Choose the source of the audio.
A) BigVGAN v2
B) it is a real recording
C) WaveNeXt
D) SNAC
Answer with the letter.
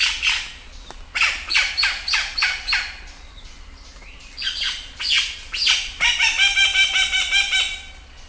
B